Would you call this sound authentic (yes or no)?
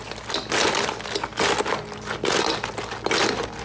yes